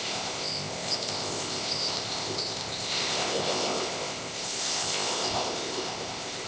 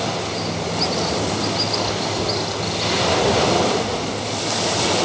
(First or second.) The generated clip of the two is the first